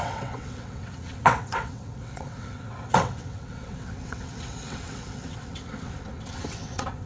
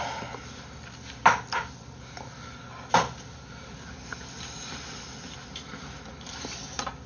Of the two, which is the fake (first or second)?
first